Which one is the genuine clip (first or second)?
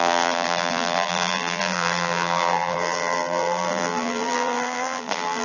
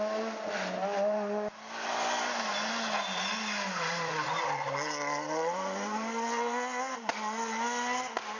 second